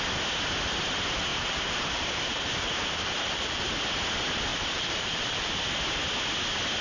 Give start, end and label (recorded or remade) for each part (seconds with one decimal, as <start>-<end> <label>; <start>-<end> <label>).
0.0-1.3 recorded; 1.3-3.8 remade; 3.8-4.5 recorded; 4.5-5.8 remade; 5.8-6.8 recorded